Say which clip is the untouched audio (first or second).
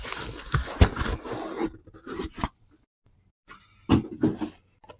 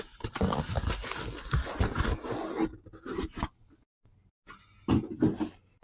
second